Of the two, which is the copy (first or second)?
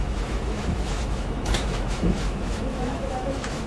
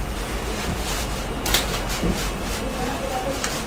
first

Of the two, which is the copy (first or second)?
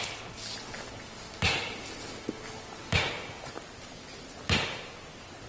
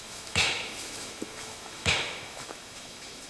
second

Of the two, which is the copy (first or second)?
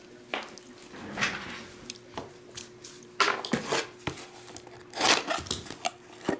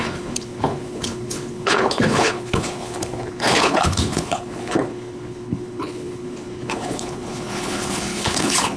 second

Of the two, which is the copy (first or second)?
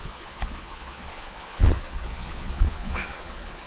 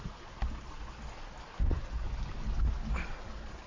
first